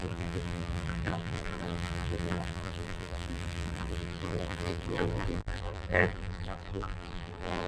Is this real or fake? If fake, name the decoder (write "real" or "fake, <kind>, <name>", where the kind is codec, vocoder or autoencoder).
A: fake, vocoder, BigVGAN v2